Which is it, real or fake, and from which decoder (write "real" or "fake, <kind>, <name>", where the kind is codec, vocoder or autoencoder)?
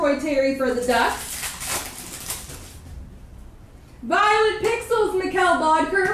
real